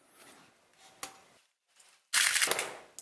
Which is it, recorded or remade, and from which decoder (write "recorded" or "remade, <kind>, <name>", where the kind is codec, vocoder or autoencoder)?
recorded